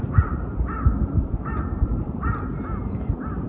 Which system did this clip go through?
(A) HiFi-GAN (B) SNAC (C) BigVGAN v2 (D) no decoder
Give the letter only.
C